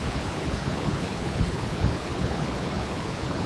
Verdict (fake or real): fake